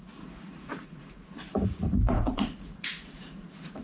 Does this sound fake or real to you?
fake